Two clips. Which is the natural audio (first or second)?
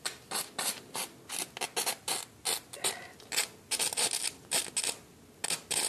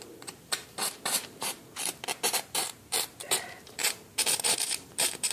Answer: first